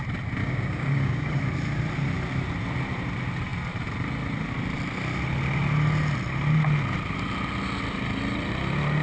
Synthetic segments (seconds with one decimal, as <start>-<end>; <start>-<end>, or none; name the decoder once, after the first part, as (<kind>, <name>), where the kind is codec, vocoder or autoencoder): 0.4-1.3 (codec, DAC)